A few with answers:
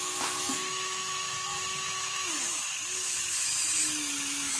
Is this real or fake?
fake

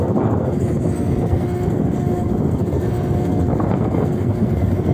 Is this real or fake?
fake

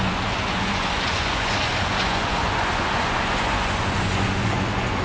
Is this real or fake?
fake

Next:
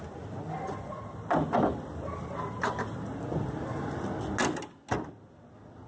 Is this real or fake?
real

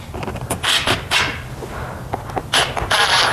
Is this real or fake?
real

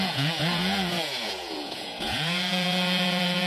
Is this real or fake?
fake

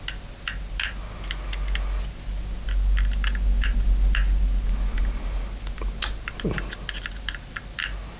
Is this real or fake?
real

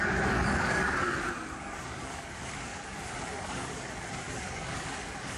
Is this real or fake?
fake